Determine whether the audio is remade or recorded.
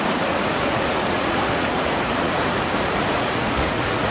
remade